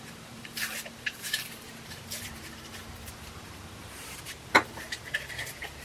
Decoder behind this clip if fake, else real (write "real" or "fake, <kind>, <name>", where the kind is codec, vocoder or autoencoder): fake, vocoder, BigVGAN v2